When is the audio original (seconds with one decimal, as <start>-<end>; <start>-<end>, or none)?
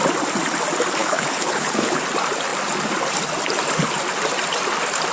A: 0.0-1.0; 2.0-5.1